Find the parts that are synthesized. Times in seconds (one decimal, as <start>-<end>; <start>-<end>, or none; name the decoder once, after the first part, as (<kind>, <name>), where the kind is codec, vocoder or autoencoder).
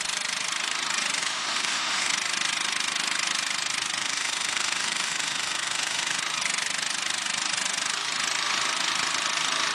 1.2-2.1 (autoencoder, DAC-VAE); 4.0-6.2